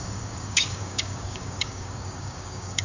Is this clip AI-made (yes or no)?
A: yes